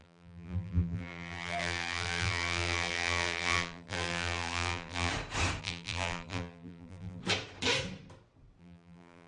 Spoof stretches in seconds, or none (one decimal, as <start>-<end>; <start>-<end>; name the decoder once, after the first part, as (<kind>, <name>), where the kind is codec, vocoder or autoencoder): 0.0-5.1 (vocoder, BigVGAN v2); 5.6-7.2; 8.6-9.3